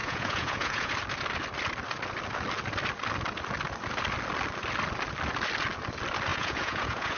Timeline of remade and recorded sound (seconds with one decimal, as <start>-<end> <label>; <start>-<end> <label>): 0.0-0.9 remade; 0.9-6.3 recorded; 6.3-7.2 remade